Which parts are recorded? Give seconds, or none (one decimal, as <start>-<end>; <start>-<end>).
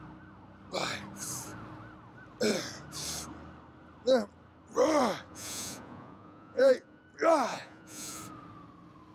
0.0-5.3; 7.0-7.5; 8.2-9.1